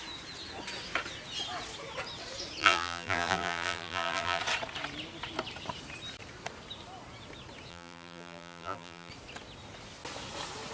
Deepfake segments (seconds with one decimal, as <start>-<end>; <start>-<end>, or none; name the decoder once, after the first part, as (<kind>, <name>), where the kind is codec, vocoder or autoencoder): 2.6-4.4 (vocoder, BigVGAN v2); 7.7-9.1